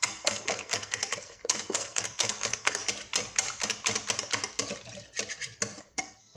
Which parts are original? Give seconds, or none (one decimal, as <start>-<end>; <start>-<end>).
2.8-5.8